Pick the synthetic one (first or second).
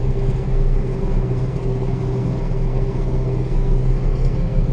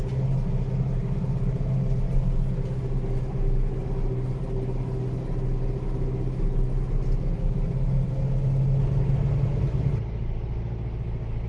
first